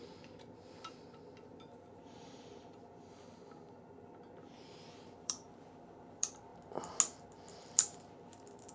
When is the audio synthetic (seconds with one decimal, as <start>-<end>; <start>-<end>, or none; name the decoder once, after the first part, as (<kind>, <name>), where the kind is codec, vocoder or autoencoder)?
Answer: 0.0-6.5 (vocoder, BigVGAN v2); 7.2-8.7